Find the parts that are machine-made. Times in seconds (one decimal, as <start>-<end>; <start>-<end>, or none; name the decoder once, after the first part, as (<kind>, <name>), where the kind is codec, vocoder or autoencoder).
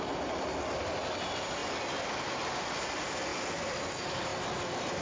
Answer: none